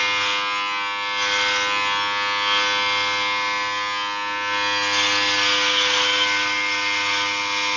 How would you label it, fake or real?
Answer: real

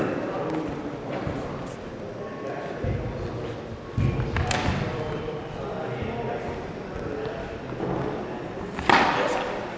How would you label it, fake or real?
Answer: real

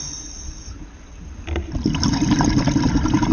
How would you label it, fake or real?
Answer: real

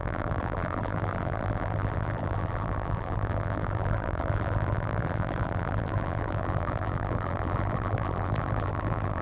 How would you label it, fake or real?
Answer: fake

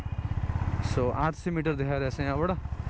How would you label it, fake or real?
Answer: real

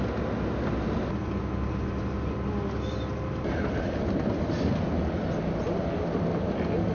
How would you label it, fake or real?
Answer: real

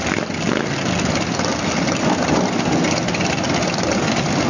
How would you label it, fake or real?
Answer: real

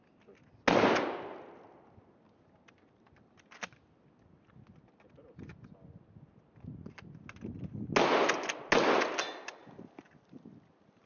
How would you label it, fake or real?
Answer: real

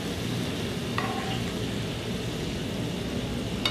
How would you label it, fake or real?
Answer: real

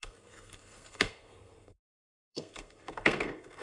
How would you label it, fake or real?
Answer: fake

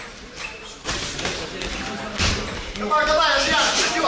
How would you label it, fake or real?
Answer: fake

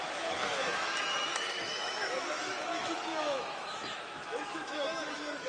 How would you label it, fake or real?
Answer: fake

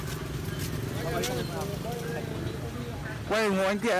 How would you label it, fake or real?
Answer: real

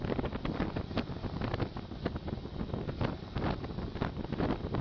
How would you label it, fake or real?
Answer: real